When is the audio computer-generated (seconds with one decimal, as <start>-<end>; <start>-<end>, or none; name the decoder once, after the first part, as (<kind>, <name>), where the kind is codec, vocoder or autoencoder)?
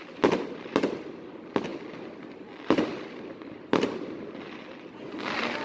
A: none